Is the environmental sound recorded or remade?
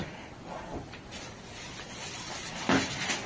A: recorded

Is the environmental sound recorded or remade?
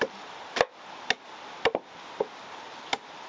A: recorded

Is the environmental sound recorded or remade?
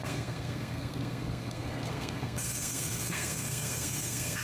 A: remade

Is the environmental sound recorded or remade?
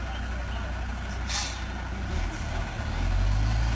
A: recorded